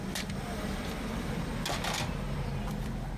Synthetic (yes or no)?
no